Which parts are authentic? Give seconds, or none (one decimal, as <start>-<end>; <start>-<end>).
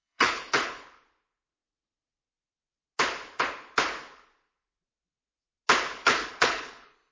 0.8-6.0